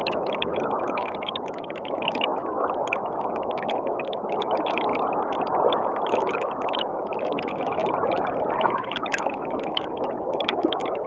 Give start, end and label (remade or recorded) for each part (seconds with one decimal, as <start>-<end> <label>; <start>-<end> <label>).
0.0-4.9 remade; 4.9-5.7 recorded; 5.7-7.8 remade; 7.8-8.6 recorded; 8.6-11.1 remade